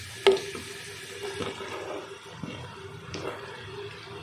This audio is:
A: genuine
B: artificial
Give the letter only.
A